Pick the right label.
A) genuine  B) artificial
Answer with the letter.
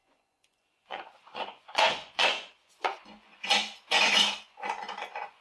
B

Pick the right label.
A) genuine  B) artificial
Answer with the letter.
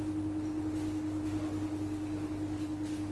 A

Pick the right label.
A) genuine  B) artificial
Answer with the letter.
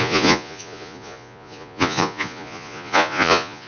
B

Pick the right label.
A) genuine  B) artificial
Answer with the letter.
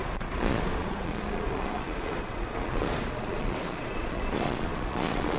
B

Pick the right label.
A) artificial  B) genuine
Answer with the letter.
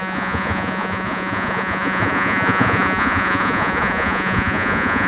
A